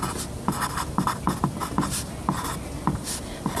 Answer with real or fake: real